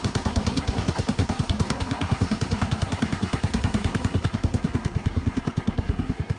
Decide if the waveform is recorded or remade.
remade